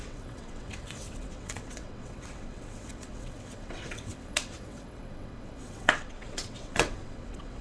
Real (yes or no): no